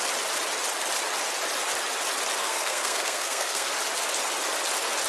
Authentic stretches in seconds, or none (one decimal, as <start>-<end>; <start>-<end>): 0.0-2.4; 3.7-5.1